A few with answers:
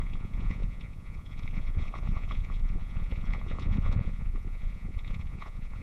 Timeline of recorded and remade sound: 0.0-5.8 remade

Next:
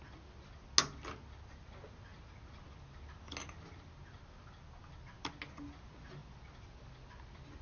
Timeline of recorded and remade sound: 0.0-7.6 recorded

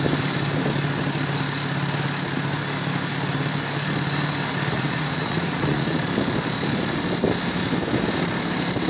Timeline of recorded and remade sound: 0.0-4.7 recorded; 4.7-6.0 remade; 6.0-8.9 recorded